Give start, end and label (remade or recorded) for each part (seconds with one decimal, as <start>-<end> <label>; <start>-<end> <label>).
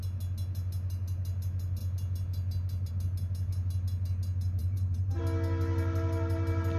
0.0-4.6 recorded; 4.6-5.2 remade; 5.2-6.8 recorded